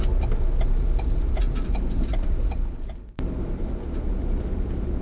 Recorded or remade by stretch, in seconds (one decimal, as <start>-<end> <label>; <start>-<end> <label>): 0.0-2.1 recorded; 2.1-5.0 remade